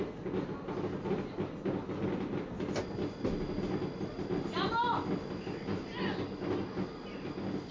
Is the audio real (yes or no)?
yes